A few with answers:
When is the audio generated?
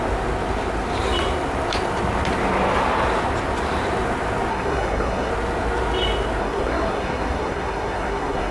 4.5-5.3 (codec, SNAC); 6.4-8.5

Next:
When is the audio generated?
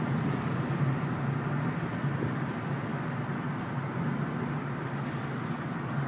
none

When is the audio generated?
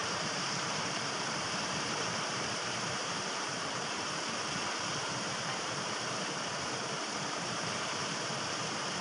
0.0-9.0 (vocoder, BigVGAN v2)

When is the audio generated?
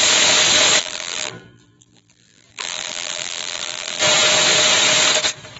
0.8-4.0 (vocoder, BigVGAN v2)